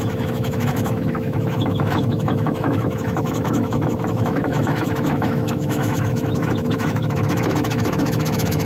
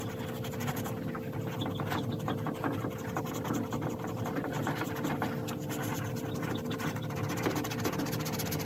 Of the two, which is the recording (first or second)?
second